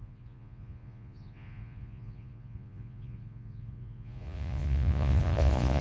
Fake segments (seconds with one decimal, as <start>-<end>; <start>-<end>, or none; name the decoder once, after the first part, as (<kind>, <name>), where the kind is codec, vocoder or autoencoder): 0.0-5.8 (vocoder, Vocos)